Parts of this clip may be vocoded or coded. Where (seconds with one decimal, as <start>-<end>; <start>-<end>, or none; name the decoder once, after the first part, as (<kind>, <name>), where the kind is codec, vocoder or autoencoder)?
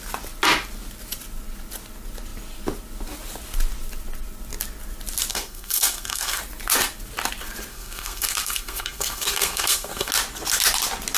5.3-6.4 (codec, SNAC); 7.7-10.1